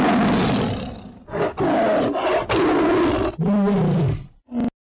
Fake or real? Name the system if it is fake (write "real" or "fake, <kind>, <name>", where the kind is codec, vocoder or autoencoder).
real